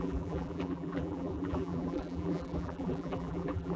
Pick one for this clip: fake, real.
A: fake